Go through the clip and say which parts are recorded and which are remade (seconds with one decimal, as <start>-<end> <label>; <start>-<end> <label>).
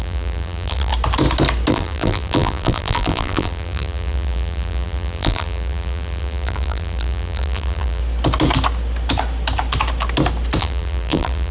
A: 0.0-0.9 remade; 0.9-1.7 recorded; 1.7-8.0 remade; 8.0-10.6 recorded; 10.6-11.5 remade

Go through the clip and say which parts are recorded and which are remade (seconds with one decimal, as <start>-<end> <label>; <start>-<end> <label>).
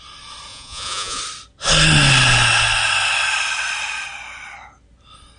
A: 0.0-0.5 recorded; 0.5-1.2 remade; 1.2-5.4 recorded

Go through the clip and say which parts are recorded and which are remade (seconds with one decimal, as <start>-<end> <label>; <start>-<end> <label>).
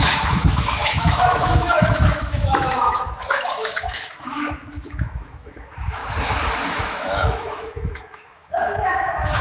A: 0.0-6.0 remade; 6.0-6.7 recorded; 6.7-9.4 remade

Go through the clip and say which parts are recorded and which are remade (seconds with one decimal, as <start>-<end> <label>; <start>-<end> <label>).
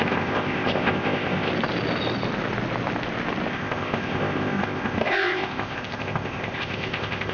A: 0.0-1.5 remade; 1.5-3.5 recorded; 3.5-7.3 remade